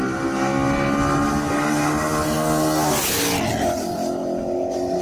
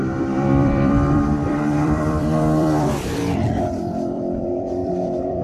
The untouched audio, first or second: first